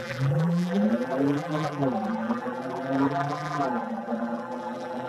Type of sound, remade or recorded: remade